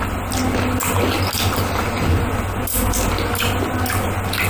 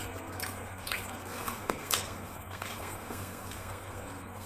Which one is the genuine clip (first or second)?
first